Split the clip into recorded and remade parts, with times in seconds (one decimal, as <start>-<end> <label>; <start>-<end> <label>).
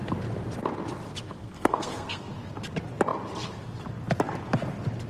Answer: 0.0-1.4 recorded; 1.4-2.3 remade; 2.3-5.1 recorded